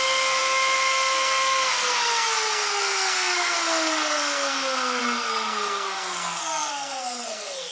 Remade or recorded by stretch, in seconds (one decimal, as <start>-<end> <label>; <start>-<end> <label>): 0.0-7.7 remade